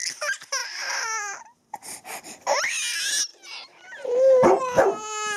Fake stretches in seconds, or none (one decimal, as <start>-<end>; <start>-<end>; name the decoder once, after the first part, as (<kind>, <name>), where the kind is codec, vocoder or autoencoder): 0.6-2.7 (vocoder, BigVGAN v2); 3.3-4.6